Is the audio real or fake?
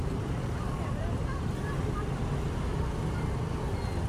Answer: real